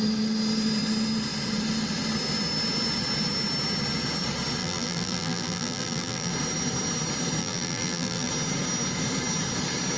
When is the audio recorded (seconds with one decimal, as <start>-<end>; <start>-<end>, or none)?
0.0-4.6; 6.3-7.4; 8.3-10.0